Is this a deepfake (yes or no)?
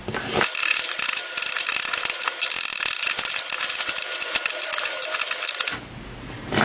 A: no